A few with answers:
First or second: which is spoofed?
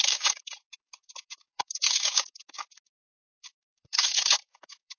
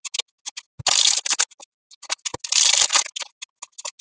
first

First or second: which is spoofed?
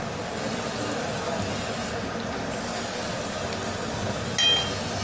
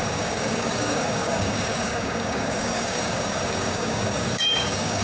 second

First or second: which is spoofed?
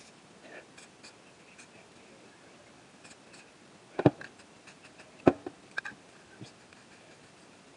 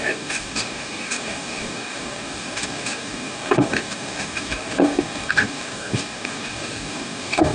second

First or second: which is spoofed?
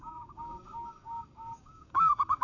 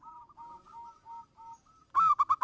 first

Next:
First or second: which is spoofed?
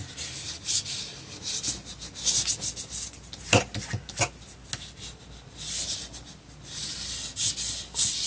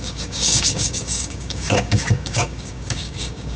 second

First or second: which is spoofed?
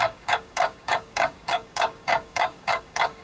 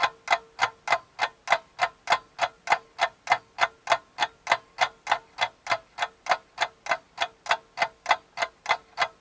first